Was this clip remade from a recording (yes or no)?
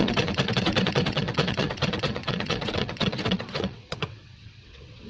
yes